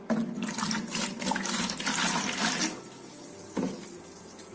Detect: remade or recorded recorded